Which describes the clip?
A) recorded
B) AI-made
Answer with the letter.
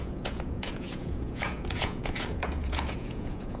B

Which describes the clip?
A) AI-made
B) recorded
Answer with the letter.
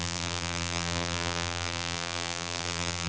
A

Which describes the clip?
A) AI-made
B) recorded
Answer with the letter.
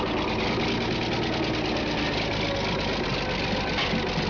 B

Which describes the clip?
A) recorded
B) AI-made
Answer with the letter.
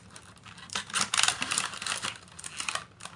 A